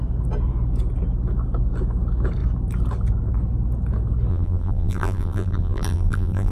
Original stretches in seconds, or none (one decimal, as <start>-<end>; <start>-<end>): 0.0-4.3